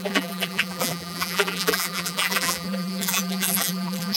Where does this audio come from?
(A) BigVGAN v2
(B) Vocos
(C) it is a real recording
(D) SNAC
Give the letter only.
A